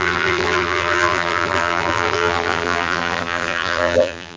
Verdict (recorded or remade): remade